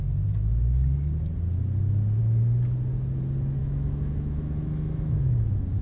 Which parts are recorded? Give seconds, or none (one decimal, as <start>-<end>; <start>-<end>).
0.0-3.6; 5.3-5.8